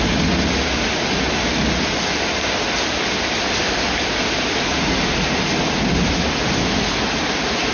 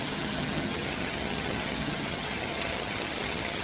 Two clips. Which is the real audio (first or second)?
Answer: first